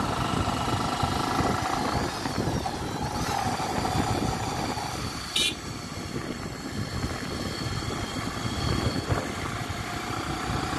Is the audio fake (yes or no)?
no